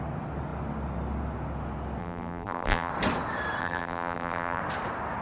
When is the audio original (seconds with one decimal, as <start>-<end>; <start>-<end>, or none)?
0.0-2.0; 2.9-3.6; 4.6-5.2